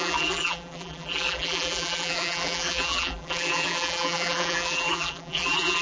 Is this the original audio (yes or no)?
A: no